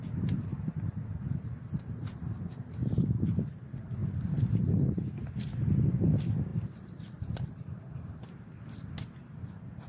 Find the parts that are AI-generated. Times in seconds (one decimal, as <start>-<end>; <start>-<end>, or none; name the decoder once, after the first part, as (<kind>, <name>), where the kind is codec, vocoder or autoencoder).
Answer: 0.5-2.8 (vocoder, BigVGAN v2); 6.5-8.6